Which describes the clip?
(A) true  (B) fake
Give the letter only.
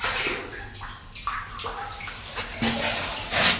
A